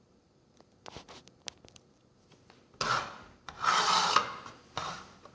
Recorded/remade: recorded